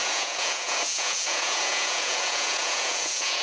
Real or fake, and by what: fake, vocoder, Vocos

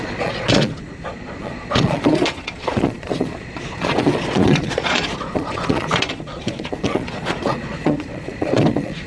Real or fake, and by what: fake, vocoder, Vocos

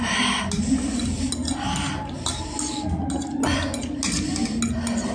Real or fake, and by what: real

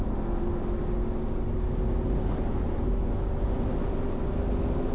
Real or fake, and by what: real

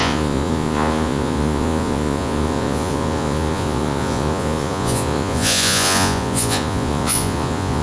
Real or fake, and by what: fake, vocoder, Vocos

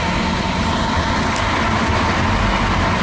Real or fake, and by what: real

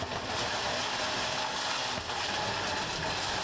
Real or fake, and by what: real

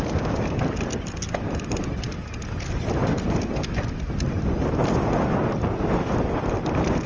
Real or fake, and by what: real